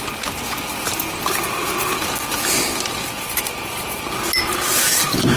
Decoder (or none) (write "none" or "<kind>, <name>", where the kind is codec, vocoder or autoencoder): none